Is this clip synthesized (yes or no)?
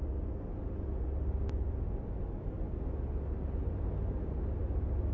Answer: no